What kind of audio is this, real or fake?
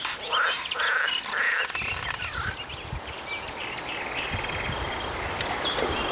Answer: real